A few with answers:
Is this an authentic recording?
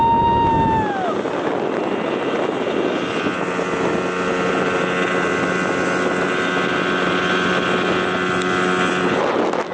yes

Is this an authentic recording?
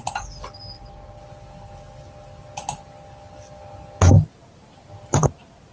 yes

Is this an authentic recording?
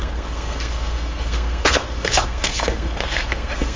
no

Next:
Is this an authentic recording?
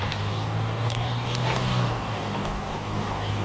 no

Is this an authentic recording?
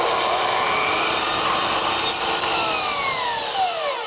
yes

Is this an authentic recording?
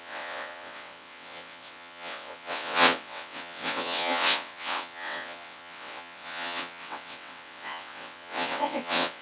no